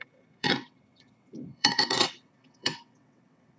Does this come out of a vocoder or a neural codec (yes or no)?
yes